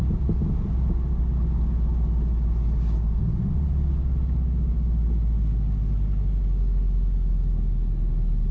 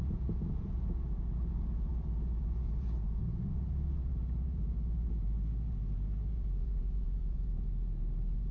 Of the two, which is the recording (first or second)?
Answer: first